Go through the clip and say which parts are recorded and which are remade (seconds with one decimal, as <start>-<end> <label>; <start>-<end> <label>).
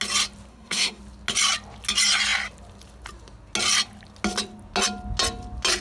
0.0-0.5 recorded; 0.5-1.0 remade; 1.0-5.8 recorded